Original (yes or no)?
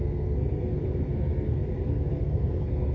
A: no